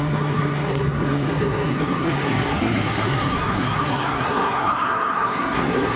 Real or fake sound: fake